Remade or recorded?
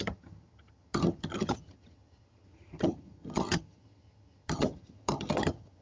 remade